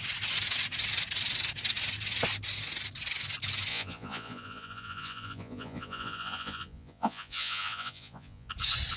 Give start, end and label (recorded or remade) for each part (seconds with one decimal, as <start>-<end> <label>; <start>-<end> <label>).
0.0-3.7 recorded; 3.7-8.5 remade; 8.5-9.0 recorded